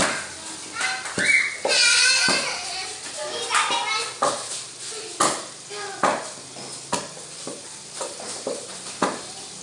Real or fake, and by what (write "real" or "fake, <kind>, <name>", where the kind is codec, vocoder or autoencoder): real